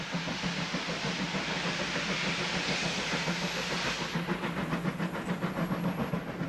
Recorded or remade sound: recorded